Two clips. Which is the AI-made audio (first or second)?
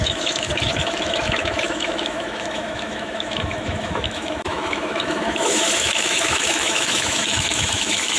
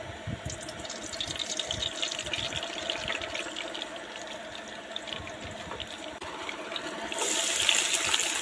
first